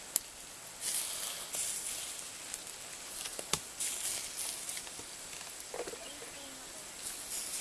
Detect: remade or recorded recorded